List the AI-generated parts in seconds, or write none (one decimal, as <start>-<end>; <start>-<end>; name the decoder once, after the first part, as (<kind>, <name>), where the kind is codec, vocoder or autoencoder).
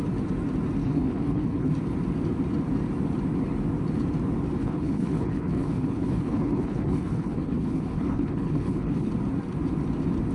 0.8-1.7 (codec, HILCodec); 4.6-9.1